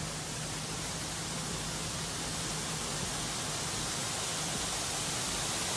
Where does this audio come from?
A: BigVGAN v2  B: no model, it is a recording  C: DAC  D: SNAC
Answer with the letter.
B